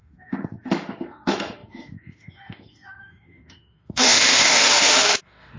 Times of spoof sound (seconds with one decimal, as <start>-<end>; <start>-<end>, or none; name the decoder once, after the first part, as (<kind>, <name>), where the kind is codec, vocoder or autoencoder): 0.0-5.6 (autoencoder, DAC-VAE)